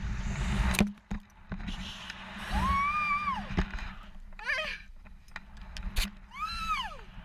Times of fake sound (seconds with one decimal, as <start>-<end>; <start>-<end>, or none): 1.4-2.5